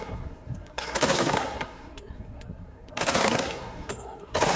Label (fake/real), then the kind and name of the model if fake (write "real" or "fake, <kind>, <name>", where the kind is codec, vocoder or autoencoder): fake, codec, SNAC